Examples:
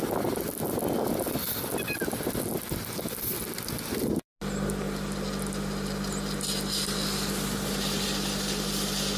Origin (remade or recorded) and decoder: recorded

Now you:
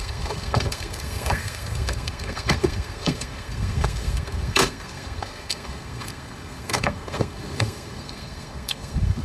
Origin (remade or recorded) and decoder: remade, codec, SNAC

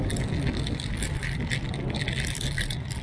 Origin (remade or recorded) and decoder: recorded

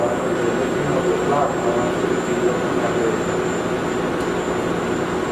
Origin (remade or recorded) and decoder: recorded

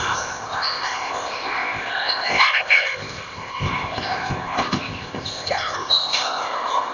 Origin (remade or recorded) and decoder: remade, codec, ZipCodec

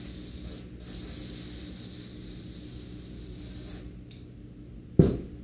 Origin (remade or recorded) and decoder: recorded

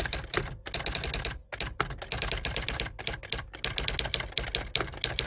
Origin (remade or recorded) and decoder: recorded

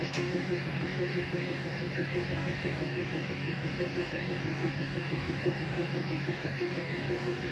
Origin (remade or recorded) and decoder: remade, codec, DAC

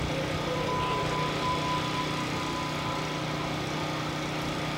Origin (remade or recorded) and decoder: recorded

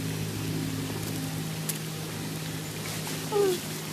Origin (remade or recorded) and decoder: recorded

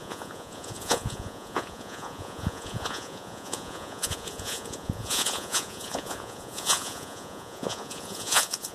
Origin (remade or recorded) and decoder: remade, vocoder, Vocos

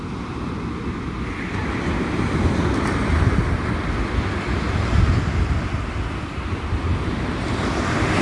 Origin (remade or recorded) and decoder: recorded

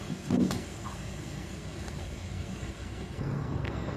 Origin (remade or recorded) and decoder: remade, codec, SNAC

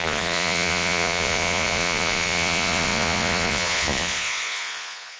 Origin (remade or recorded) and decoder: remade, vocoder, Vocos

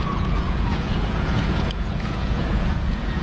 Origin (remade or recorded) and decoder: remade, vocoder, Vocos